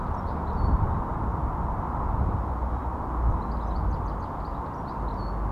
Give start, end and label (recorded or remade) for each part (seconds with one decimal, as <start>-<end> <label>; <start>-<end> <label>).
0.0-5.5 recorded